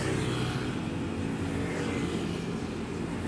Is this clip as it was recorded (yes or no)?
yes